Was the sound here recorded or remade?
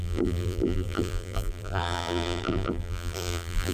remade